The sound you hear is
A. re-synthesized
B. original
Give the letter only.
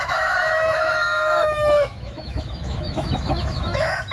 A